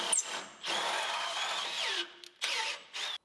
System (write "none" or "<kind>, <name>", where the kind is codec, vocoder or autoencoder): none